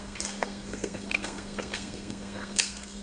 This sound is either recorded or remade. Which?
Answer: remade